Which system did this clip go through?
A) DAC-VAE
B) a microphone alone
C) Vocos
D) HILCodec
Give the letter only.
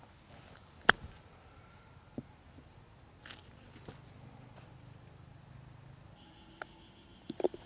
B